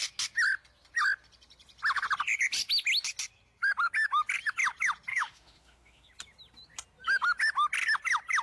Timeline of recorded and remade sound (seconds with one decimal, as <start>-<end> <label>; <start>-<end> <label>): 0.0-5.1 recorded; 5.1-6.1 remade; 6.1-8.4 recorded